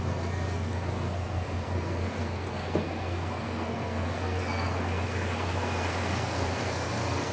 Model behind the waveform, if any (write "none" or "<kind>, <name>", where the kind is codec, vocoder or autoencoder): codec, SNAC